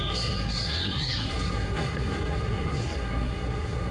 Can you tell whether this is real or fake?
fake